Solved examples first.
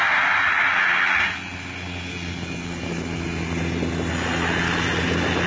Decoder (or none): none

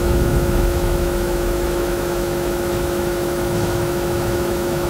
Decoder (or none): autoencoder, DAC-VAE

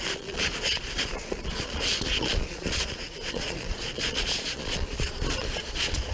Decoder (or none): vocoder, Vocos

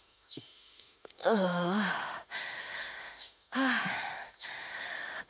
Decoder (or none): autoencoder, DAC-VAE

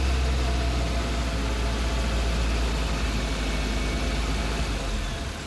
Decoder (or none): none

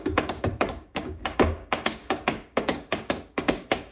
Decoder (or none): codec, DAC